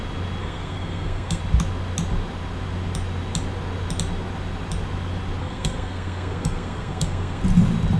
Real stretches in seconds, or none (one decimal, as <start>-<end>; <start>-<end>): 0.0-0.4; 1.4-5.4; 7.4-8.0